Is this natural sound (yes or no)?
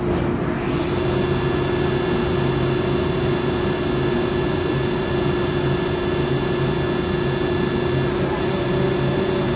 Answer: yes